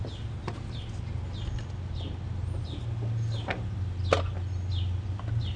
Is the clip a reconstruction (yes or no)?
no